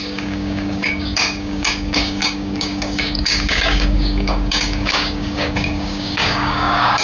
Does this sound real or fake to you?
fake